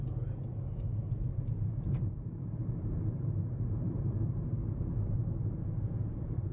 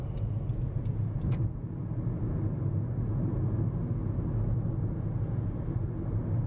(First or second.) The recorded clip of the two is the second